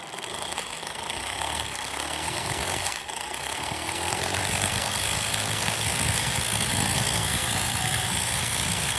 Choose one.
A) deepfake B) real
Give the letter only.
A